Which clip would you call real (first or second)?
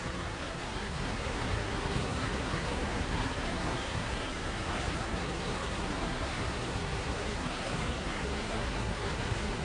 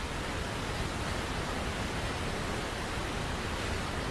second